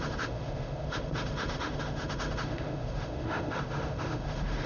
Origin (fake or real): fake